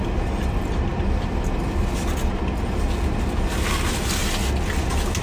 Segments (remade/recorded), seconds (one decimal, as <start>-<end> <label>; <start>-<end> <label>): 0.0-5.2 recorded